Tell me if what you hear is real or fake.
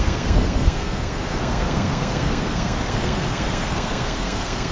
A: fake